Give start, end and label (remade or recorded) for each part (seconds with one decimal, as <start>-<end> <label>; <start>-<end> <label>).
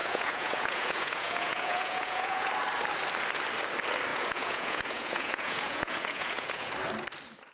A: 0.0-2.5 remade; 2.5-4.1 recorded; 4.1-6.7 remade; 6.7-7.5 recorded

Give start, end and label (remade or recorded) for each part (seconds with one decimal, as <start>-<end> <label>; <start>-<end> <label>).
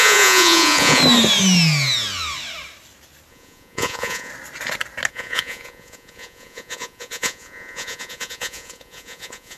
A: 0.0-1.0 remade; 1.0-3.3 recorded; 3.3-4.3 remade; 4.3-5.1 recorded; 5.1-9.6 remade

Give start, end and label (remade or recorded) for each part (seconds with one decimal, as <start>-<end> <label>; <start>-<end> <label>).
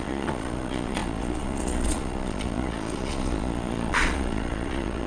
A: 0.0-5.1 remade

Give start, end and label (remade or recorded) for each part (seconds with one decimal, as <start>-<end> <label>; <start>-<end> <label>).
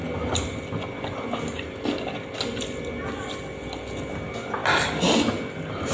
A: 0.0-5.9 recorded